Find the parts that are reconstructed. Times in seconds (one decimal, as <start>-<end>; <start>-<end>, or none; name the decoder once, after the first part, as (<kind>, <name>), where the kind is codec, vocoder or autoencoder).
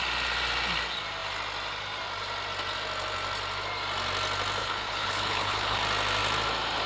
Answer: 4.6-5.8 (codec, HILCodec)